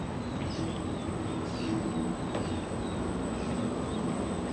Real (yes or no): yes